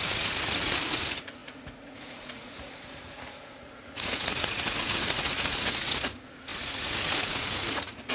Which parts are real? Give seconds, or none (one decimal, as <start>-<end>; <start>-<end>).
none